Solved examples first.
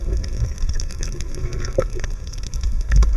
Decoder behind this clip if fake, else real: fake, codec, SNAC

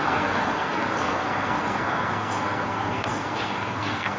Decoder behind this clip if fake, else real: fake, codec, SNAC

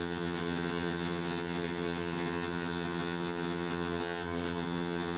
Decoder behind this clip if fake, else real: fake, vocoder, HiFi-GAN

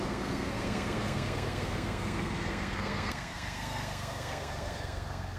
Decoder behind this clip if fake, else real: fake, codec, SNAC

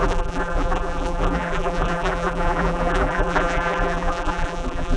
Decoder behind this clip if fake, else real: fake, vocoder, BigVGAN v2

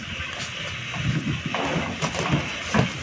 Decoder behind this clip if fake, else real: real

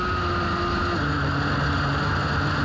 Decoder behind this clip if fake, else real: real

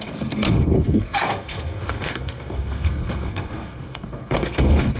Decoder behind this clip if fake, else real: fake, codec, SNAC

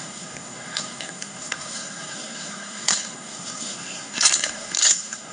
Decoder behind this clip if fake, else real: fake, codec, SNAC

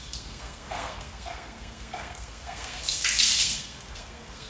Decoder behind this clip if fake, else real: fake, codec, SNAC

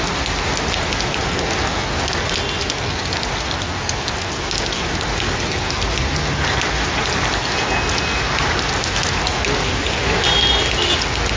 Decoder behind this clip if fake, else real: real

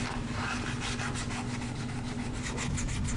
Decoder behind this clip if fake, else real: real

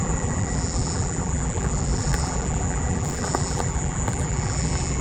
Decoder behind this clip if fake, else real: fake, vocoder, BigVGAN v2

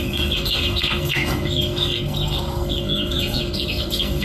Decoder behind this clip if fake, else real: fake, codec, SNAC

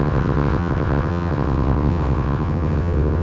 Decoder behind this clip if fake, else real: fake, vocoder, WaveNeXt